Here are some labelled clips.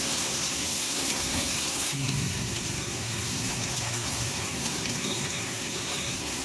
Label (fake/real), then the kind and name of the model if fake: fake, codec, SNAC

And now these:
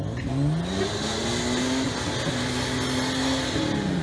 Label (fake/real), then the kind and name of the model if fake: real